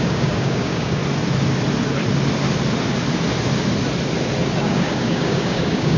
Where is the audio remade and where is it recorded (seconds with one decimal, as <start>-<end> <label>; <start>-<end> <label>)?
0.0-1.0 remade; 1.0-4.6 recorded; 4.6-6.0 remade